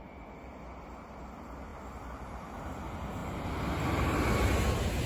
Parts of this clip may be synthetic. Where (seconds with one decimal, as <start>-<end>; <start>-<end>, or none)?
none